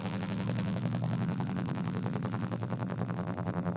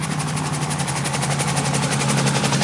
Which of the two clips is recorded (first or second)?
second